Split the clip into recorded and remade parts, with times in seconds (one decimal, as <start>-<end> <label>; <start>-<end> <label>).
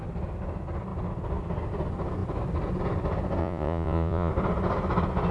0.0-3.4 recorded; 3.4-4.3 remade; 4.3-5.3 recorded